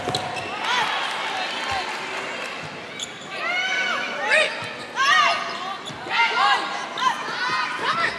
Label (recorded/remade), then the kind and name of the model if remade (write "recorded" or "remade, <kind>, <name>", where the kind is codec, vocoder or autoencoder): recorded